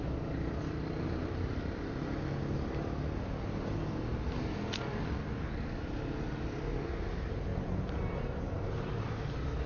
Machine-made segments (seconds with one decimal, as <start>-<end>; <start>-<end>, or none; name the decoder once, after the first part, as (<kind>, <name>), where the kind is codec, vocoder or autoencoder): 7.5-9.2 (vocoder, BigVGAN v2)

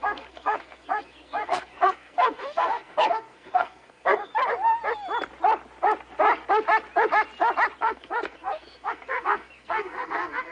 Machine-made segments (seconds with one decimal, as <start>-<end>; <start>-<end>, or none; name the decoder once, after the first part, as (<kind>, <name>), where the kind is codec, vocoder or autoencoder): 0.0-4.3 (codec, SNAC); 7.8-10.5

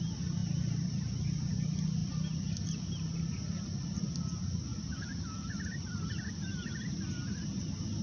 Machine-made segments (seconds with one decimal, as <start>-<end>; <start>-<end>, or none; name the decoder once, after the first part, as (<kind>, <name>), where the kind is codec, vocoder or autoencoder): none